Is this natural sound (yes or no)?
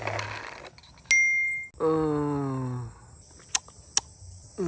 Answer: yes